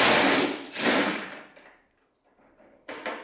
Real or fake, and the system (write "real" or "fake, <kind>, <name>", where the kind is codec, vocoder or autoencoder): fake, vocoder, BigVGAN v2